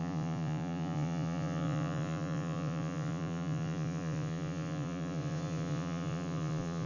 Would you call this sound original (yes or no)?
no